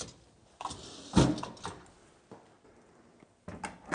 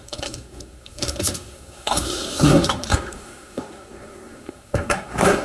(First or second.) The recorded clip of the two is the first